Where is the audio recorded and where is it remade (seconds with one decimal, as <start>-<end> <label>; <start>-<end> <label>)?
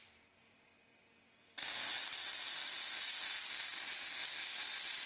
0.0-5.1 recorded